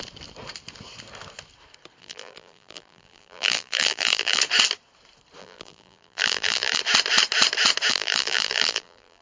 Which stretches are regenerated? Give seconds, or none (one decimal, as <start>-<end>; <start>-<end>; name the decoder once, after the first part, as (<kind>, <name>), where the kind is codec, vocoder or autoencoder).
2.0-4.4 (vocoder, BigVGAN v2); 5.4-6.8; 7.9-9.2